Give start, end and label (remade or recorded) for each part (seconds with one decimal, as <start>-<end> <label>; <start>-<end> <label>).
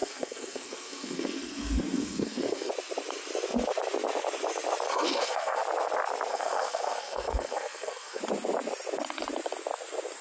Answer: 0.0-2.7 remade; 2.7-4.9 recorded; 4.9-5.6 remade; 5.6-6.3 recorded; 6.3-8.2 remade; 8.2-10.2 recorded